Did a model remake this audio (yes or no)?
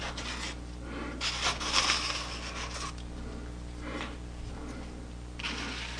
no